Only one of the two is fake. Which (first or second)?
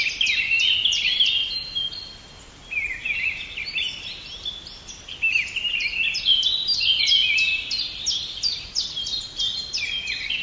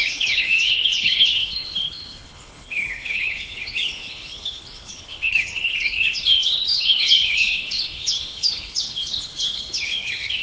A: second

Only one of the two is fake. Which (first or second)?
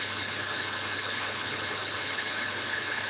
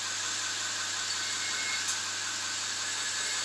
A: first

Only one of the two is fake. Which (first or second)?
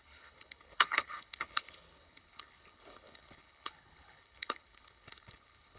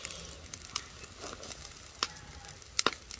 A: first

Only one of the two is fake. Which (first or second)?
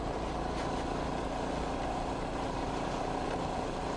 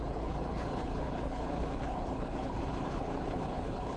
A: second